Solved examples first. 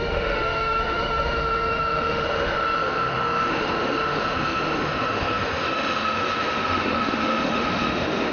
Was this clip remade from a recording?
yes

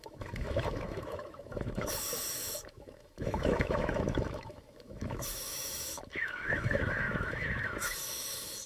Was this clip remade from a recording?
yes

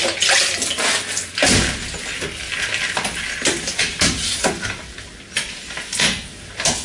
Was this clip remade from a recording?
no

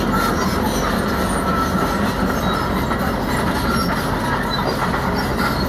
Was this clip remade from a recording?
no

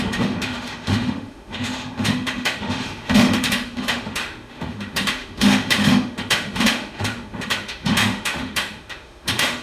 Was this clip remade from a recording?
yes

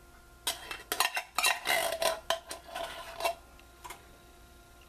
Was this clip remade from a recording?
no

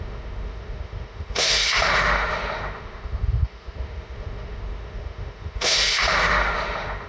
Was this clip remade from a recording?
yes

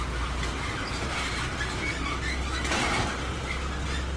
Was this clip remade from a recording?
no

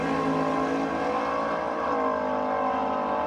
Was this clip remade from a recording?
no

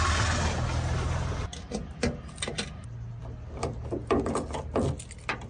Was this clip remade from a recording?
no